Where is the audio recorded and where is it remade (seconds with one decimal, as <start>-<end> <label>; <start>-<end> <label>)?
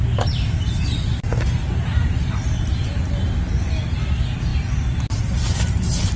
0.0-6.2 recorded